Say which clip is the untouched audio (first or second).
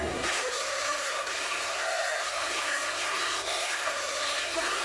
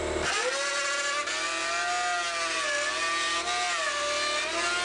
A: second